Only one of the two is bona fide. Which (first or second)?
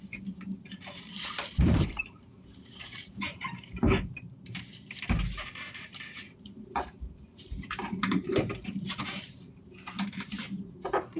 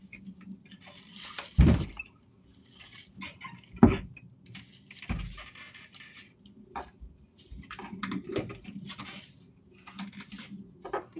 second